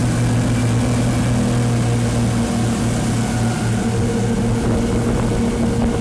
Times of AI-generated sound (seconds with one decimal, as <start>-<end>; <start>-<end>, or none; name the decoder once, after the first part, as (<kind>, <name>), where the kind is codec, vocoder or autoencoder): none